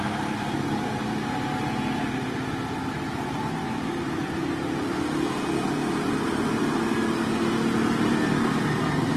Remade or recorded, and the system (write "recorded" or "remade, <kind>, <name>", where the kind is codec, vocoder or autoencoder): recorded